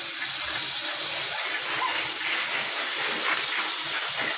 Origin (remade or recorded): recorded